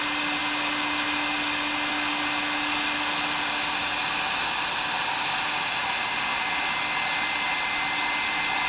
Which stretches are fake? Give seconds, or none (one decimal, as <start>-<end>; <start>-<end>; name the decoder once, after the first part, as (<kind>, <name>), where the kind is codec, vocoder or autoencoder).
none